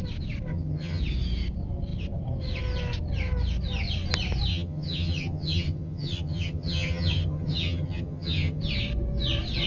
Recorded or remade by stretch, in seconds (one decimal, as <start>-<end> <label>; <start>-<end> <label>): 0.0-0.5 recorded; 0.5-1.0 remade; 1.0-4.5 recorded; 4.5-8.6 remade; 8.6-9.7 recorded